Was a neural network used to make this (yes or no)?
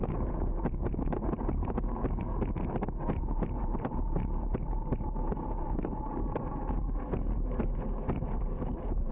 yes